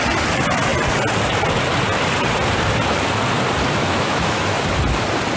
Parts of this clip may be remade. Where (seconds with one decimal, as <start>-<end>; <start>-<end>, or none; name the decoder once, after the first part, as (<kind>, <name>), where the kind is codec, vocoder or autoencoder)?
3.8-4.6 (autoencoder, DAC-VAE)